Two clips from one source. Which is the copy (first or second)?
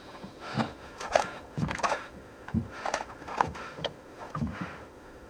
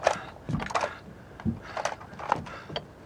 first